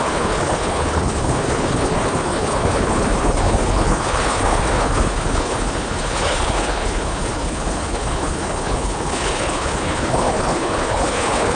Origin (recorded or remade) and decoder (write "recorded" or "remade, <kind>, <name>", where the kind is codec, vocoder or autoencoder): remade, codec, HILCodec